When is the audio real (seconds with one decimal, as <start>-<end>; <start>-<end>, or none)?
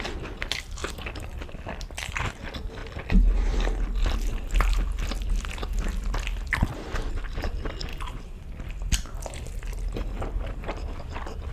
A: 0.0-0.8; 2.4-7.9; 8.7-11.5